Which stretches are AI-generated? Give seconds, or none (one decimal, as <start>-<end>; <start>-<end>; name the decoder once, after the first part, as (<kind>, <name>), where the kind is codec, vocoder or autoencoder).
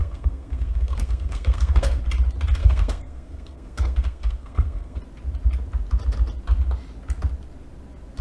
0.0-2.0 (codec, SNAC); 2.6-5.0